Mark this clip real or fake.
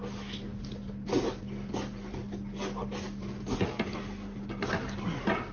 real